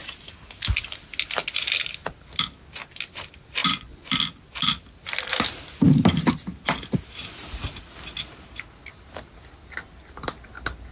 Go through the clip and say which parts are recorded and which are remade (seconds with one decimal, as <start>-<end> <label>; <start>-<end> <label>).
0.0-3.6 recorded; 3.6-4.1 remade; 4.1-10.9 recorded